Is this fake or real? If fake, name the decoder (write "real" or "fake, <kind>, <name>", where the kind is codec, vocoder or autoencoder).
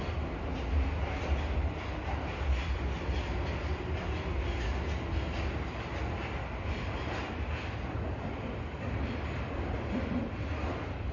real